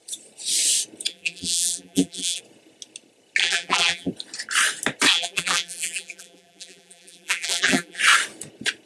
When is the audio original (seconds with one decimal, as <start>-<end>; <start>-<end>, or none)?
0.0-1.1; 2.4-3.4; 4.1-5.1; 8.0-8.9

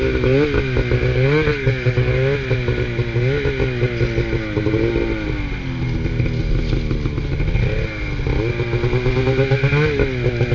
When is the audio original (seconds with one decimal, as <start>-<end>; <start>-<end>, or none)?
0.0-1.1; 2.1-10.5